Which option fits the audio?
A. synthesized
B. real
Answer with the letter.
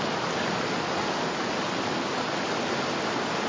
B